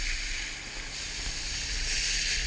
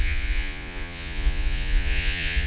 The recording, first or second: first